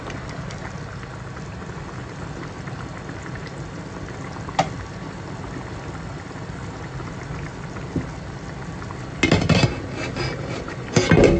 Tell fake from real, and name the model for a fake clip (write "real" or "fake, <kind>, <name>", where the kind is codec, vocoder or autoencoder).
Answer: real